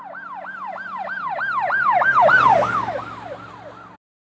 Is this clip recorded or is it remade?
recorded